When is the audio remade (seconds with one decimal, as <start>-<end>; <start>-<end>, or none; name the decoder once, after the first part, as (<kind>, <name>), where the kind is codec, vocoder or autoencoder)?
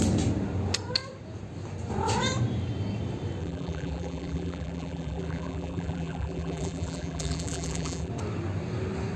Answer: 3.4-8.1 (vocoder, BigVGAN v2)